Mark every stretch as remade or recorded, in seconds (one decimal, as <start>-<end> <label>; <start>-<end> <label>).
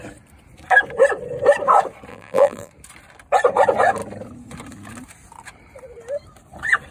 0.0-2.1 recorded; 2.1-2.7 remade; 2.7-6.9 recorded